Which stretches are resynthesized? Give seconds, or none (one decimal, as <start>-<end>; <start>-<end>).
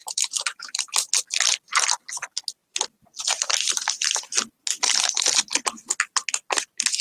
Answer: 0.0-1.1